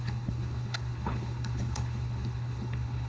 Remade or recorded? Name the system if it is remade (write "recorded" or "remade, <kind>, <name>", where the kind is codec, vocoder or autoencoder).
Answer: remade, codec, HILCodec